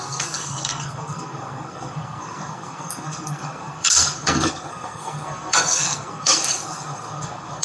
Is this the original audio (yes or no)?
no